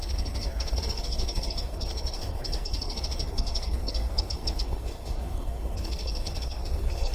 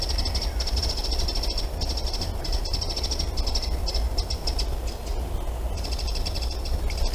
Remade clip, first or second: first